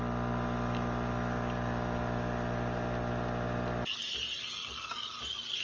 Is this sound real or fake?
real